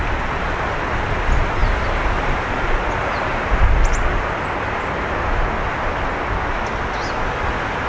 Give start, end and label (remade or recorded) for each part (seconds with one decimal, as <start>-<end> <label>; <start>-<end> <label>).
0.0-7.9 recorded